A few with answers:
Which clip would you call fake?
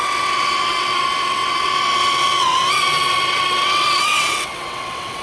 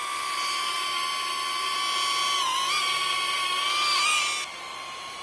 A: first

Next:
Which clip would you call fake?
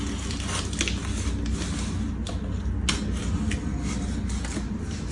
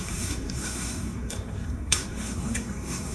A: second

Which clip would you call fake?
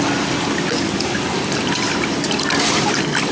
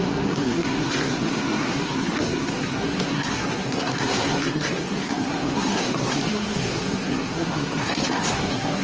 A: second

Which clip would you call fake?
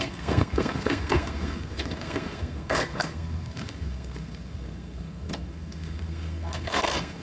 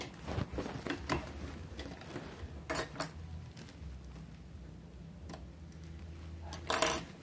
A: first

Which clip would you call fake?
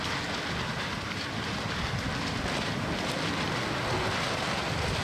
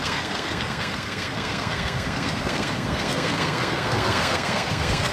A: second